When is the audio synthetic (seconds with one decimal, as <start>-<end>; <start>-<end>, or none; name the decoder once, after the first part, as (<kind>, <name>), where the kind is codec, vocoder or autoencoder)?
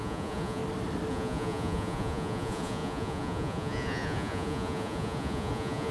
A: 0.0-0.6 (vocoder, Vocos); 1.1-5.9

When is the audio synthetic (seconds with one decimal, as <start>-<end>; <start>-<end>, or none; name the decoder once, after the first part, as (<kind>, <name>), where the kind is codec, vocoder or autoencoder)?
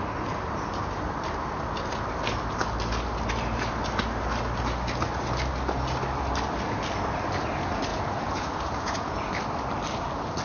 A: 7.9-9.3 (vocoder, Vocos)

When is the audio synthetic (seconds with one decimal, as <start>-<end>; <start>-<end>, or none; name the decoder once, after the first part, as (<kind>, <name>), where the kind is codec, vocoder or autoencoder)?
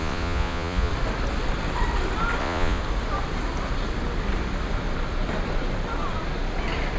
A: 0.0-0.9 (vocoder, Vocos); 2.4-2.8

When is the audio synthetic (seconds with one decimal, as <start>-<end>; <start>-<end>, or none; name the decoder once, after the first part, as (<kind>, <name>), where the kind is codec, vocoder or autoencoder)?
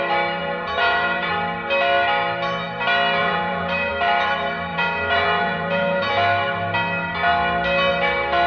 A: 0.4-1.3 (vocoder, Vocos); 3.2-3.9; 4.7-6.1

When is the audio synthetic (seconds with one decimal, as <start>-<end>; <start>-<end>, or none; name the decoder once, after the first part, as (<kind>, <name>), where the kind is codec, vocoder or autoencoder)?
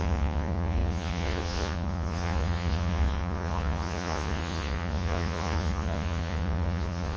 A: 0.0-7.2 (vocoder, Vocos)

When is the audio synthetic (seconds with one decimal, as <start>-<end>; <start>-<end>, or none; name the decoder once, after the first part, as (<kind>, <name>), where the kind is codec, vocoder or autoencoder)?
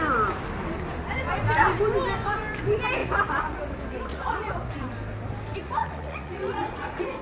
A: 3.0-3.6 (vocoder, Vocos); 4.1-4.8; 5.6-7.2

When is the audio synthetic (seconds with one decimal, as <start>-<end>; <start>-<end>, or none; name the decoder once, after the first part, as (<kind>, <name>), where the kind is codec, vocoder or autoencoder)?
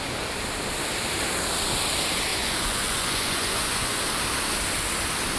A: 2.3-4.0 (vocoder, Vocos)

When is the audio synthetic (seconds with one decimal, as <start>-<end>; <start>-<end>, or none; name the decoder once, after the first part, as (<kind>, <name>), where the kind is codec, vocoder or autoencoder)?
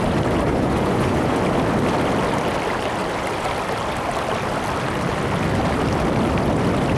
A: 0.5-1.4 (vocoder, Vocos)